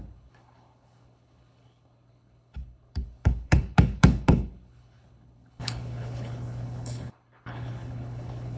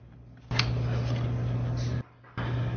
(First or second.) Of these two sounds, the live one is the second